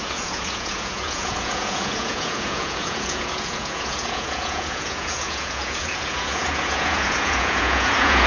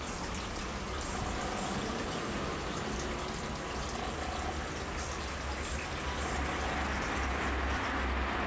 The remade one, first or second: first